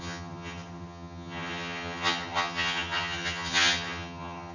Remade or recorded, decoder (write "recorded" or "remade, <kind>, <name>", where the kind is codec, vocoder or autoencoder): remade, vocoder, HiFi-GAN